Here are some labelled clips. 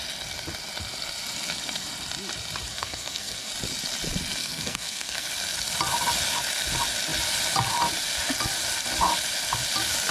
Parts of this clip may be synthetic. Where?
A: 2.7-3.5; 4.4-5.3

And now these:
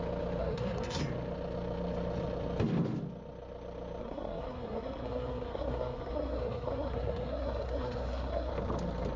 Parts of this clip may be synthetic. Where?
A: 0.4-1.0; 4.0-8.5

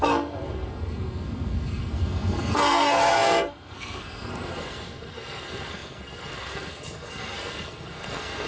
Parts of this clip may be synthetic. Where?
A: 0.0-8.5

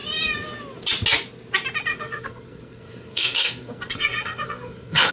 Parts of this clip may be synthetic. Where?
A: 1.9-5.1

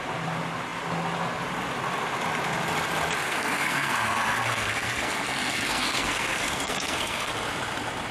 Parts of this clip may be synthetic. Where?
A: 3.2-7.3